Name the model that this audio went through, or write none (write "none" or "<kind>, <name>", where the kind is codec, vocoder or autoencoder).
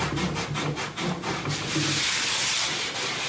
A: none